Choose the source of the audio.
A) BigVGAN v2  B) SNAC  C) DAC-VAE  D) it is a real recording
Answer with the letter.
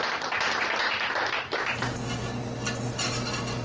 D